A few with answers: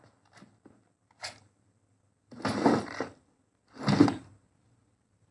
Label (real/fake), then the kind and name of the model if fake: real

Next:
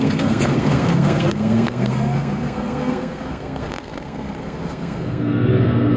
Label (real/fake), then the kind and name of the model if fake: fake, codec, SNAC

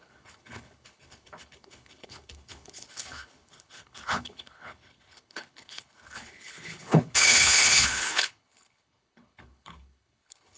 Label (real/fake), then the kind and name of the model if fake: fake, codec, HILCodec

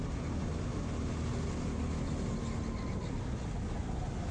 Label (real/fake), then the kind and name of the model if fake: real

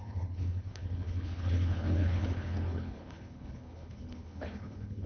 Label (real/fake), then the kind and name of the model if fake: fake, codec, HILCodec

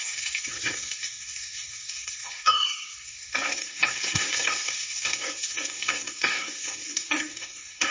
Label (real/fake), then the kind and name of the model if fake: fake, codec, SNAC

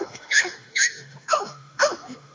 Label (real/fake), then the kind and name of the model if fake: fake, autoencoder, DAC-VAE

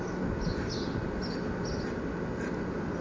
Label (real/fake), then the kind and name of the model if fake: real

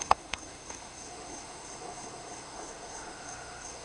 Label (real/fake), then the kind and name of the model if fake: fake, autoencoder, DAC-VAE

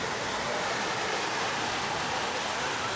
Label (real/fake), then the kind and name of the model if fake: real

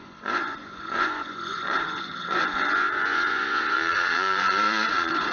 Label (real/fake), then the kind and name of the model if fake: fake, vocoder, Vocos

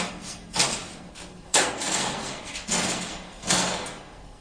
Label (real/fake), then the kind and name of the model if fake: fake, codec, SNAC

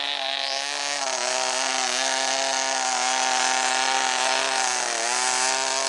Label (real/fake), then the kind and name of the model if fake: real